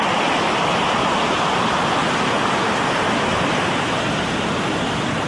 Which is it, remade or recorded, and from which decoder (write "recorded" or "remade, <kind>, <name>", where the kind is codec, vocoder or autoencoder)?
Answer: recorded